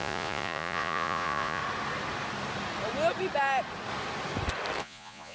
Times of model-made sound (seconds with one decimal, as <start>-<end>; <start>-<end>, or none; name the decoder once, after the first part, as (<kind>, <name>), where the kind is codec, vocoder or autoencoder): 0.0-1.6 (vocoder, Vocos); 4.8-5.3